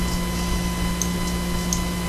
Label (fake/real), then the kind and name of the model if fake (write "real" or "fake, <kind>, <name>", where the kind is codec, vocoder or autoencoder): real